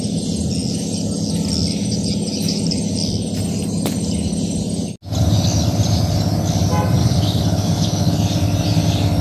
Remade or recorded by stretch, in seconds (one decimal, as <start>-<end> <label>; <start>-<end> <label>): 0.0-7.0 recorded; 7.0-8.0 remade; 8.0-9.2 recorded